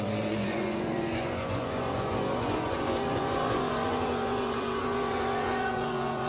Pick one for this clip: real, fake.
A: fake